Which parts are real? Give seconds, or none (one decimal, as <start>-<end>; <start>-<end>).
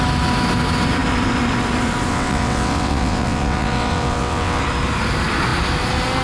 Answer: 0.0-2.1; 4.6-6.2